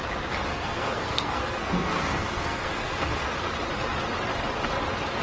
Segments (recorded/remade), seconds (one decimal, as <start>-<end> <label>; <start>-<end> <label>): 0.0-0.5 recorded; 0.5-3.3 remade; 3.3-5.2 recorded